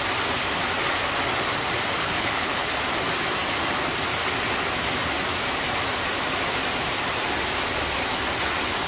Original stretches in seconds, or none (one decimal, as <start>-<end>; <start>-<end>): 0.0-2.0; 2.7-8.9